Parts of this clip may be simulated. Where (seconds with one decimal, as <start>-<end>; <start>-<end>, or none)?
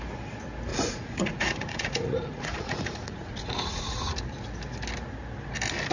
0.7-4.2